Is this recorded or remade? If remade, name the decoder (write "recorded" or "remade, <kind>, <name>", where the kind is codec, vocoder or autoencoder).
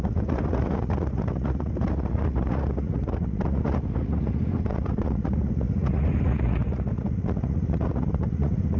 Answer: remade, vocoder, Vocos